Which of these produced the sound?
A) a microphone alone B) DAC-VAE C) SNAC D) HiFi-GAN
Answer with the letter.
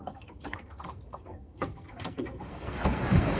C